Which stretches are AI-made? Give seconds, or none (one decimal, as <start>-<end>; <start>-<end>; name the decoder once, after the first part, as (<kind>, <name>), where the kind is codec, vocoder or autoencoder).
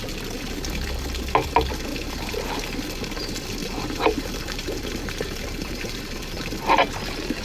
1.9-2.6 (vocoder, BigVGAN v2); 3.6-6.0